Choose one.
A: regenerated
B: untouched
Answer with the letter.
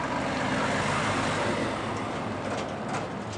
B